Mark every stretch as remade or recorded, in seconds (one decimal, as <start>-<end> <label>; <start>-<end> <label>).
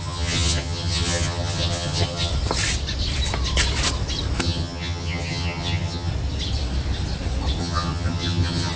0.0-2.3 remade; 2.3-4.4 recorded; 4.4-6.1 remade; 6.1-7.6 recorded; 7.6-8.8 remade